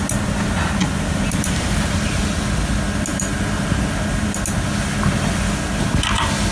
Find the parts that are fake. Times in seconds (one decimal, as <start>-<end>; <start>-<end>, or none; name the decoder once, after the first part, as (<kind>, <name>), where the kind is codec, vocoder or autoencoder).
0.8-2.2 (vocoder, BigVGAN v2); 3.1-4.4